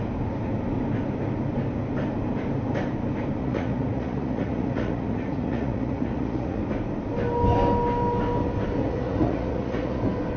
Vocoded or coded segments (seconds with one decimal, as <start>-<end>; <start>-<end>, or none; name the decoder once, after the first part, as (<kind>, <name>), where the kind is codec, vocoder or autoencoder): 3.4-6.6 (vocoder, Vocos); 8.8-10.0